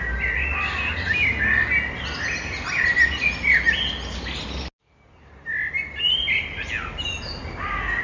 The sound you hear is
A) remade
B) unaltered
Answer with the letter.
B